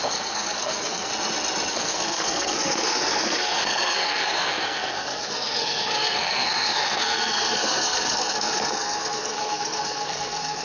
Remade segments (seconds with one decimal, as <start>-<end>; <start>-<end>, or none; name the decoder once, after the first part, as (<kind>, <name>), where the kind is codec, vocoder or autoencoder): 0.0-1.1 (codec, SNAC); 1.7-10.6